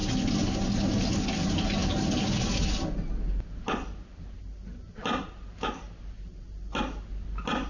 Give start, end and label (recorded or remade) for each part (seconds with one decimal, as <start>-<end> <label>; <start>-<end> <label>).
0.0-7.7 recorded